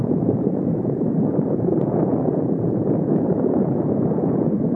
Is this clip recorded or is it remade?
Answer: remade